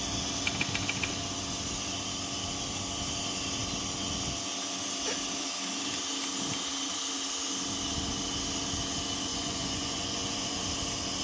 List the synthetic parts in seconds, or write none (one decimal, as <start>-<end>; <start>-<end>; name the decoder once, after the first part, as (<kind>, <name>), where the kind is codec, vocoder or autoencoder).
9.3-10.6 (vocoder, Vocos)